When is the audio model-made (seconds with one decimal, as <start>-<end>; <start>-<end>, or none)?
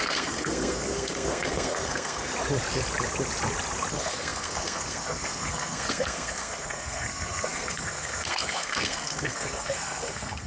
0.0-2.3; 3.9-10.5